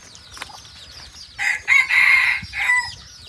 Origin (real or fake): real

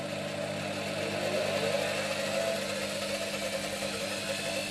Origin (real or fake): real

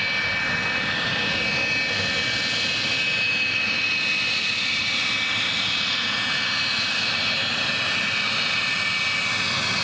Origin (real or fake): real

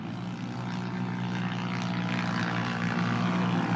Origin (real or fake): real